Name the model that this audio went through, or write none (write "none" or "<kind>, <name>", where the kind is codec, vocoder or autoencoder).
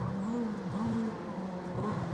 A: vocoder, BigVGAN v2